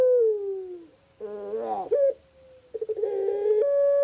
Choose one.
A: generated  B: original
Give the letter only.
B